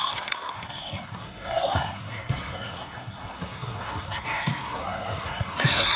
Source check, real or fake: fake